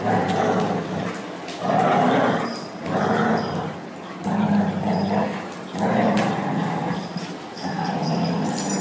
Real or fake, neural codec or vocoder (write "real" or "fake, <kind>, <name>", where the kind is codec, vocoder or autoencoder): real